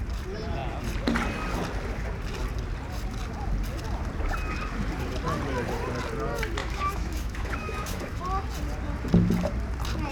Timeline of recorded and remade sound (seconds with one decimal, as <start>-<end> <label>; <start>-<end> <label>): 0.0-6.6 recorded; 6.6-8.2 remade; 8.2-10.1 recorded